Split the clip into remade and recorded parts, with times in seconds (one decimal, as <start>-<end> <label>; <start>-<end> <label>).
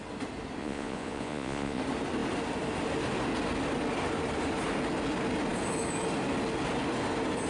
0.0-0.6 recorded; 0.6-1.8 remade; 1.8-7.5 recorded